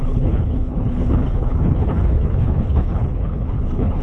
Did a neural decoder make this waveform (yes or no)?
yes